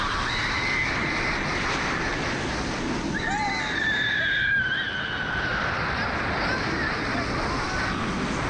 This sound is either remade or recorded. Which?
recorded